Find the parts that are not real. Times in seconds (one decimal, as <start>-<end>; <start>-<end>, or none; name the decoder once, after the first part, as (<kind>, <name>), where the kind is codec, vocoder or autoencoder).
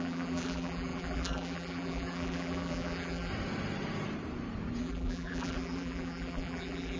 0.0-3.3 (vocoder, BigVGAN v2); 4.8-7.0